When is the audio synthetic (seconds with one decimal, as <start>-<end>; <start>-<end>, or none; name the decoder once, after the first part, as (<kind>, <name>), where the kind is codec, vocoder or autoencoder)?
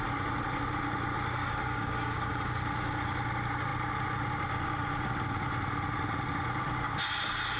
1.4-2.3 (codec, DAC)